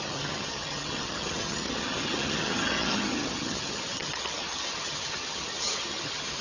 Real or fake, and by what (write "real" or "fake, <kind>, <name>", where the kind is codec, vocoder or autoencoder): fake, vocoder, HiFi-GAN